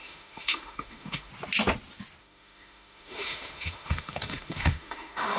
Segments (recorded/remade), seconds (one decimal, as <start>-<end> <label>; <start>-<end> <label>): 0.0-1.3 remade; 1.3-2.2 recorded; 2.2-5.4 remade